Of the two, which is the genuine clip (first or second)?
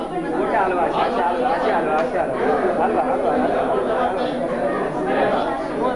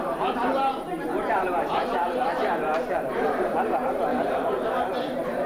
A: first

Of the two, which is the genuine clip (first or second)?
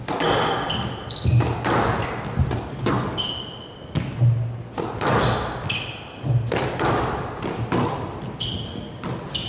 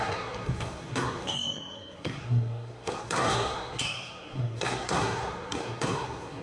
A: first